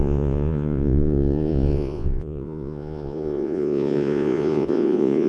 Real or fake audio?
fake